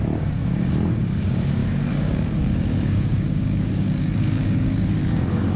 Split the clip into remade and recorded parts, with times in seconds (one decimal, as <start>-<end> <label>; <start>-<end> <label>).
0.0-0.4 remade; 0.4-1.0 recorded; 1.0-5.6 remade